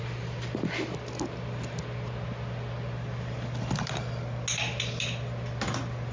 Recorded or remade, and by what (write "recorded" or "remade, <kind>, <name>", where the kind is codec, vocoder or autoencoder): recorded